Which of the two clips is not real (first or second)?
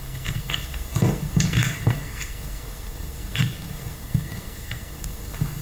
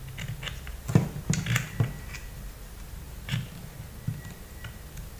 first